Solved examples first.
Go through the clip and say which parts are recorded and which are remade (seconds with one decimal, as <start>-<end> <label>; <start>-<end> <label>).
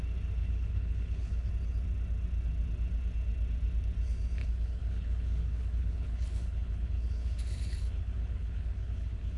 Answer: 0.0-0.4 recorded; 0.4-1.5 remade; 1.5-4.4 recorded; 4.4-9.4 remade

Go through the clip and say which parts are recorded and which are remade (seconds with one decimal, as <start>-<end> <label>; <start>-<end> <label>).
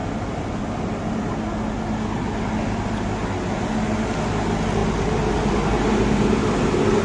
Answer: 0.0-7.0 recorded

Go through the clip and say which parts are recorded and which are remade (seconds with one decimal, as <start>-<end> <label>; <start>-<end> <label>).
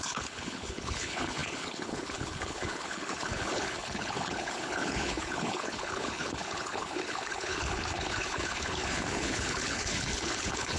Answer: 0.0-10.8 remade